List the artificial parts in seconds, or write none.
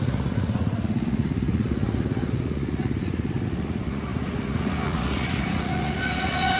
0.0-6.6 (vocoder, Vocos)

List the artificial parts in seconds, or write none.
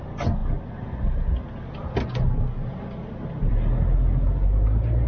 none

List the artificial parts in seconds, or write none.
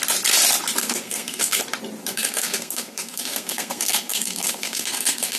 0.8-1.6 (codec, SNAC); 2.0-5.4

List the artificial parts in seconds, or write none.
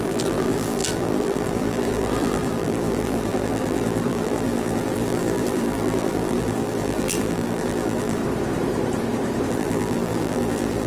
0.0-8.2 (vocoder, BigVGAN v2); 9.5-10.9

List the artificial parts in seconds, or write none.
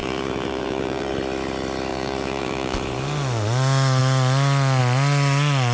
0.0-1.1 (vocoder, BigVGAN v2); 1.9-2.8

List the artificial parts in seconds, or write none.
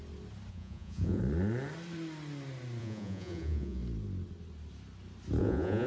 0.5-1.2 (vocoder, Vocos); 2.8-3.8; 5.4-5.9